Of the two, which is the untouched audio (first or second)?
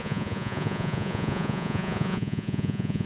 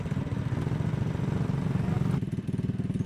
second